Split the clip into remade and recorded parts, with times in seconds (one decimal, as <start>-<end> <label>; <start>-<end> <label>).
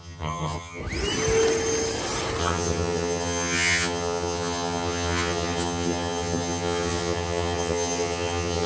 0.0-0.8 remade; 0.8-2.4 recorded; 2.4-8.7 remade